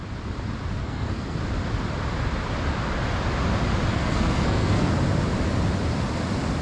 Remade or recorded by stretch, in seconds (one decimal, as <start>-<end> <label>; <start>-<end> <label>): 0.0-0.8 recorded; 0.8-1.4 remade; 1.4-3.9 recorded; 3.9-4.9 remade; 4.9-6.6 recorded